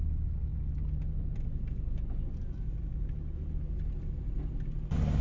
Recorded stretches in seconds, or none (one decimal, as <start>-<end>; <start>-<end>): 0.0-5.2